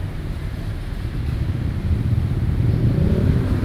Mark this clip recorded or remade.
recorded